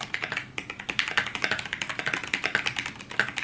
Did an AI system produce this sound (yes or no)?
no